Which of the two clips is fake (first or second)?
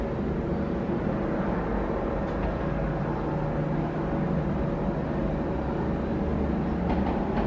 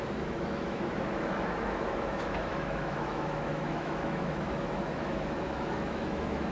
second